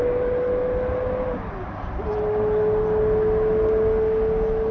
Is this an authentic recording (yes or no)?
yes